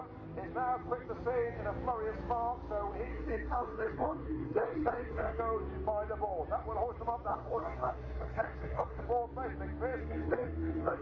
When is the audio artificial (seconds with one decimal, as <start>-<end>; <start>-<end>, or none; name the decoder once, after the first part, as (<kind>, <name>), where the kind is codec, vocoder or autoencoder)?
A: 3.1-5.4 (codec, SNAC); 7.3-9.0; 10.0-11.0